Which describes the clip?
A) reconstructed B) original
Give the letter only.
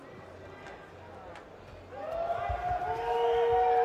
B